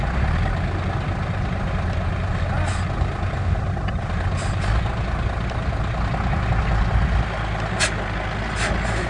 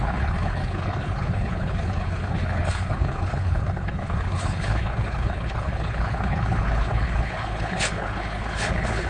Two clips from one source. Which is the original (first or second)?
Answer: first